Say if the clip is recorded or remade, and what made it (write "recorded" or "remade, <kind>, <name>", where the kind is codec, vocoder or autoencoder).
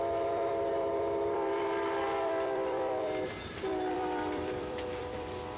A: remade, vocoder, BigVGAN v2